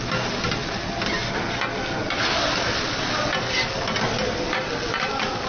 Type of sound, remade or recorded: recorded